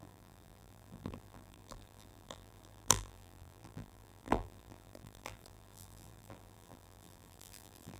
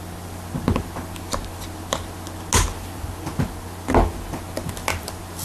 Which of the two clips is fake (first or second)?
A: first